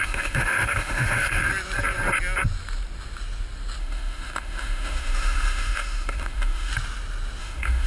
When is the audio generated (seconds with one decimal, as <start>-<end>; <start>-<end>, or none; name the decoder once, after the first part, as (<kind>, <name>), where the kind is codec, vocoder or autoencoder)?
0.0-1.5 (autoencoder, DAC-VAE); 3.8-6.7; 7.4-7.9